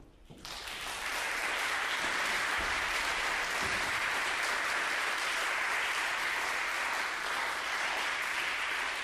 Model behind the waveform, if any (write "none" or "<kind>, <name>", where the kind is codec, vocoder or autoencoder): vocoder, BigVGAN v2